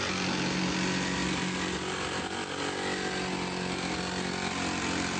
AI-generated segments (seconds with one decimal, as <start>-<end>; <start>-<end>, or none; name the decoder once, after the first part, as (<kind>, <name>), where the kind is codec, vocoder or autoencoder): none